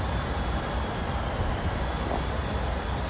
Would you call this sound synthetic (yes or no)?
no